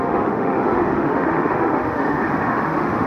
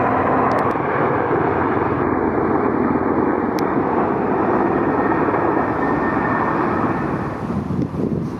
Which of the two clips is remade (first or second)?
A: first